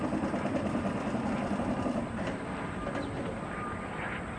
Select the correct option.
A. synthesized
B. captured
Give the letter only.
A